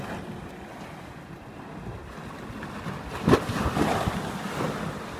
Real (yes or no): yes